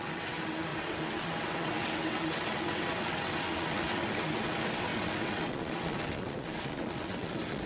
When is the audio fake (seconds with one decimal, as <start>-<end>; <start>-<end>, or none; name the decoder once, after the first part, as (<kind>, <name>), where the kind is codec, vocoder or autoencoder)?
0.0-7.7 (vocoder, WaveNeXt)